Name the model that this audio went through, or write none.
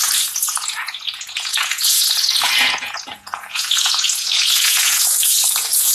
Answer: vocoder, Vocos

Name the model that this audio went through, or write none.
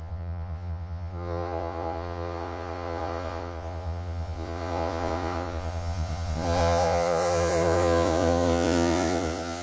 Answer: vocoder, Vocos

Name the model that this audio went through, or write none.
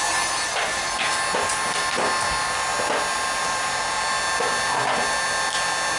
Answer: none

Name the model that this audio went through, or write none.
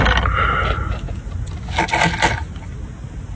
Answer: none